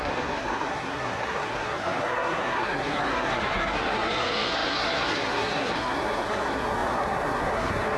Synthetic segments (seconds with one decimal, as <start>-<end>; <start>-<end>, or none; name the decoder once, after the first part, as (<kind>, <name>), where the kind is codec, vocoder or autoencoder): 0.0-8.0 (codec, SNAC)